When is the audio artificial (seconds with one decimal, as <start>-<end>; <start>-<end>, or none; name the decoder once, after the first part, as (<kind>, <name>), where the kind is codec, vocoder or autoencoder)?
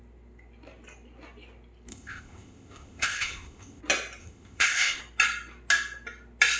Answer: 1.9-3.8 (codec, ZipCodec); 4.2-5.0